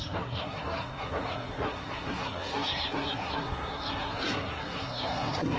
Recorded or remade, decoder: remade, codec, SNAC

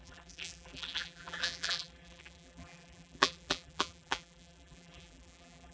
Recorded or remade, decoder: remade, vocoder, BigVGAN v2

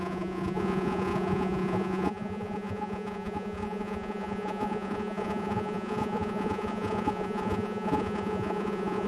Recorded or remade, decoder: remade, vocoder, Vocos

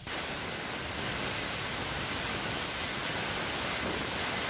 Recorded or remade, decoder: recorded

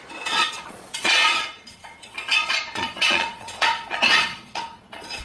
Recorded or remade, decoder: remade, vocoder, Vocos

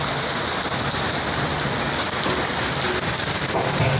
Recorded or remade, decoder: recorded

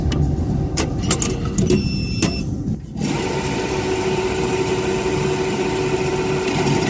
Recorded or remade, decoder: recorded